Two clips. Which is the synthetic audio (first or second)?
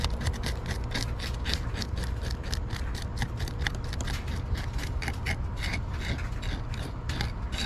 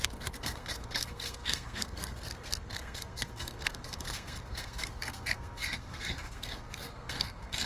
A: second